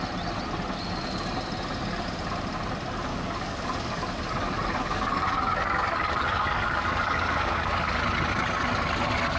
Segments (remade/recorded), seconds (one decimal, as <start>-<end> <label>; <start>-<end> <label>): 0.0-3.1 recorded; 3.1-8.0 remade; 8.0-9.4 recorded

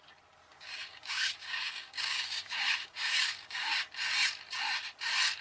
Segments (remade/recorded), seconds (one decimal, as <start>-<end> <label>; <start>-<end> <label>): 0.0-0.5 recorded; 0.5-3.7 remade; 3.7-5.4 recorded

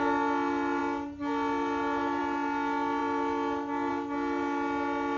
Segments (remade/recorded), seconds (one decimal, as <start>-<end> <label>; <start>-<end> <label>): 0.0-5.2 recorded

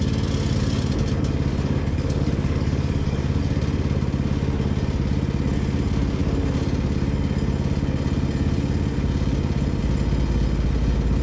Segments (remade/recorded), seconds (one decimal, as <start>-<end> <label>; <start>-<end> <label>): 0.0-1.5 recorded; 1.5-3.4 remade; 3.4-11.2 recorded

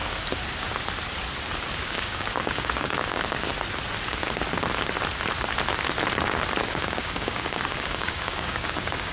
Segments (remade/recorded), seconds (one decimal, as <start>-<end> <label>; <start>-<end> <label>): 0.0-1.7 recorded; 1.7-3.5 remade; 3.5-6.6 recorded; 6.6-9.1 remade

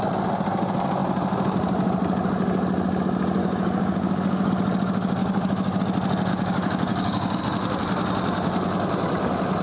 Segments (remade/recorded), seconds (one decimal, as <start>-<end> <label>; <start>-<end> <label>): 0.0-3.4 recorded; 3.4-4.5 remade; 4.5-5.2 recorded; 5.2-5.8 remade; 5.8-6.3 recorded; 6.3-7.4 remade; 7.4-9.6 recorded